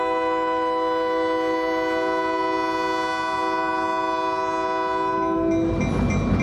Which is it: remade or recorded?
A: recorded